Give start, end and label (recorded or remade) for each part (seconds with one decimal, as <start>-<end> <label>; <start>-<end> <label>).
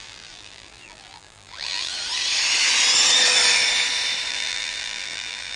0.0-1.9 remade; 1.9-4.3 recorded; 4.3-5.6 remade